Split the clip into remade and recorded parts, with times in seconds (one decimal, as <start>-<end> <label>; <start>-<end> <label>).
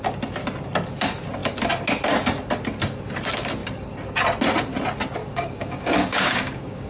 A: 0.0-5.2 recorded; 5.2-6.9 remade